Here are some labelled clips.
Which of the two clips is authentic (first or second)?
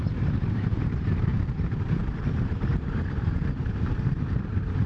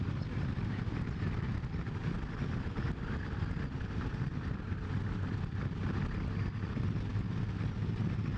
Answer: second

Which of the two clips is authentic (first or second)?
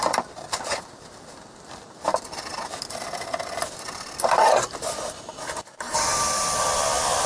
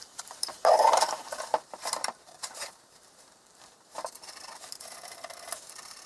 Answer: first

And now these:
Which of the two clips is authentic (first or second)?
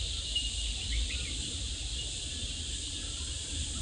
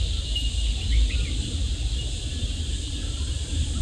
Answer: second